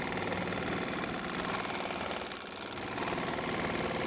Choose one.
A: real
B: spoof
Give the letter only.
A